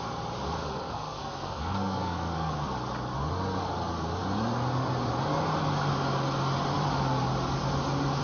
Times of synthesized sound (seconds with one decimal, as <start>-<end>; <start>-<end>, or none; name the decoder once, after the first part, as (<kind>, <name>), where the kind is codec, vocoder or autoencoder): 0.6-2.5 (codec, SNAC)

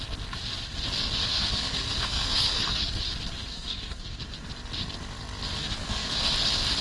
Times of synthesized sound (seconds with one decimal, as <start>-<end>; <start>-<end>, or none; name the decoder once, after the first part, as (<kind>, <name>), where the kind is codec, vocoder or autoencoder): 1.3-2.8 (codec, SNAC); 3.5-4.2; 5.6-6.3